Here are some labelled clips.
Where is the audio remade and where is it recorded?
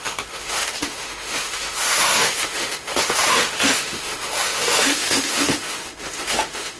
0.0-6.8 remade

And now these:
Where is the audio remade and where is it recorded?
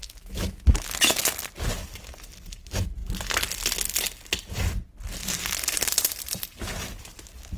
0.0-1.3 remade; 1.3-7.6 recorded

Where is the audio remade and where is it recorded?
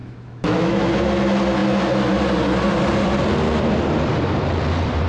0.0-0.9 remade; 0.9-5.1 recorded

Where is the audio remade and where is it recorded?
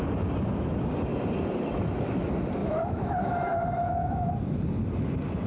0.0-2.6 recorded; 2.6-4.3 remade; 4.3-5.5 recorded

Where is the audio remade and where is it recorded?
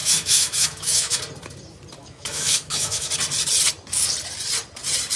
0.0-1.2 remade; 1.2-2.0 recorded; 2.0-3.1 remade; 3.1-5.2 recorded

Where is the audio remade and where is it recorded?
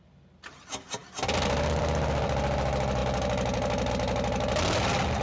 0.0-5.2 recorded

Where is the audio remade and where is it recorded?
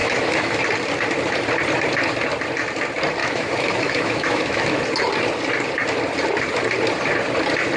0.0-0.6 remade; 0.6-3.2 recorded; 3.2-4.8 remade; 4.8-7.8 recorded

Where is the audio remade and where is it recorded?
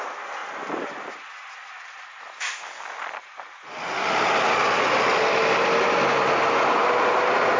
0.0-7.6 recorded